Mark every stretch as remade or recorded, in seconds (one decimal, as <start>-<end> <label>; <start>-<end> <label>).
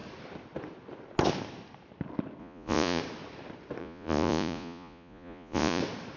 0.0-2.4 recorded; 2.4-3.0 remade; 3.0-3.8 recorded; 3.8-5.8 remade; 5.8-6.2 recorded